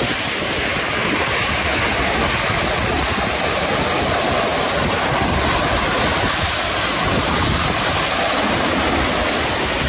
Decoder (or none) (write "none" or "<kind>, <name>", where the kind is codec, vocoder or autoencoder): none